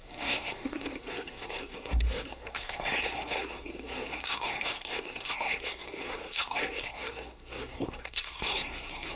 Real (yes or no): no